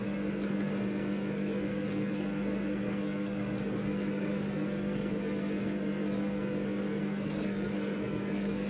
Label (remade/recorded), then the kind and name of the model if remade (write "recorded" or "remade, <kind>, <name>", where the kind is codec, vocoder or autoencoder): remade, codec, SNAC